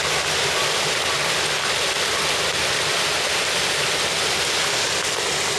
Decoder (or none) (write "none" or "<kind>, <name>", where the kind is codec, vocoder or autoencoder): none